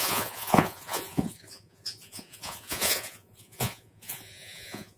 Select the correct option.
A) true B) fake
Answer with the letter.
B